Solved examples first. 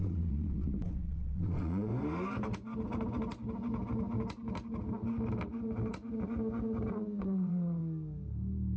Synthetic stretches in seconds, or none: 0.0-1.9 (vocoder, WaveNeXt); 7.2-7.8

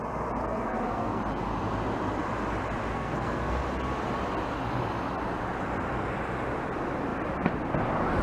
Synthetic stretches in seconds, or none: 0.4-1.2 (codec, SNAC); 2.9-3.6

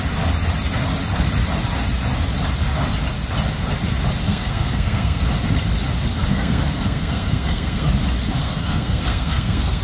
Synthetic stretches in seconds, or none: 4.3-5.2 (codec, SNAC); 6.3-7.9; 8.4-9.8

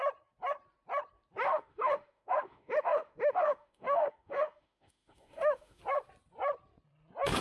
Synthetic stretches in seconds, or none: 1.4-5.8 (autoencoder, DAC-VAE)

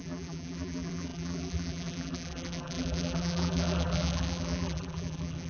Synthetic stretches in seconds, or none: 0.0-5.5 (vocoder, BigVGAN v2)